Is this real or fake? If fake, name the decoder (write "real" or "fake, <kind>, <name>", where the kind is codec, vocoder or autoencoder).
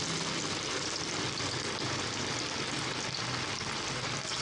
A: real